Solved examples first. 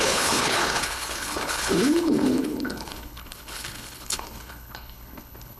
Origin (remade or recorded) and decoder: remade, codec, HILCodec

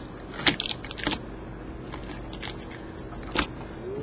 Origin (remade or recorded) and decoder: recorded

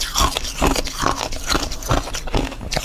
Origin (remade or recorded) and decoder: recorded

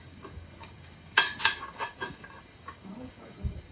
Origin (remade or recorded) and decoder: remade, codec, DAC